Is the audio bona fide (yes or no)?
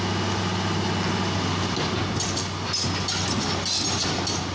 yes